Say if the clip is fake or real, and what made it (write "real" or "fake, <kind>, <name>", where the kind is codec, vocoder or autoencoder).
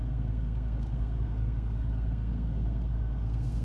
fake, codec, SNAC